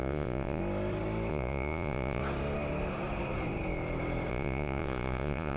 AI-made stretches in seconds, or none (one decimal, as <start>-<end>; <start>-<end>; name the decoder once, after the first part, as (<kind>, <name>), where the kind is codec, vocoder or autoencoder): 0.0-0.6 (vocoder, Vocos); 1.3-2.2; 4.3-5.6